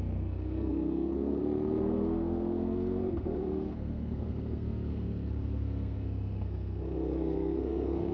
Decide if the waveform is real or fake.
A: fake